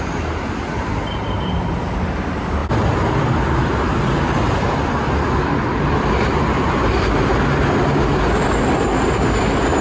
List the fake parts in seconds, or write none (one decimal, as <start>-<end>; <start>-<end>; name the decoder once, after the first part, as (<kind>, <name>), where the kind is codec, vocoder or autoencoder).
none